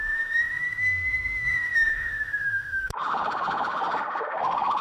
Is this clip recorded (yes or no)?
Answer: no